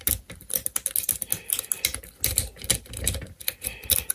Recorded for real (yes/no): yes